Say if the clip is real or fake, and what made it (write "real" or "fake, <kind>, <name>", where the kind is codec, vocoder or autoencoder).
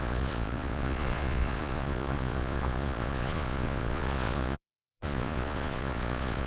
fake, vocoder, Vocos